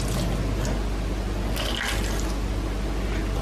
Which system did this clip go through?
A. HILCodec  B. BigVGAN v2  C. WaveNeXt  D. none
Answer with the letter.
D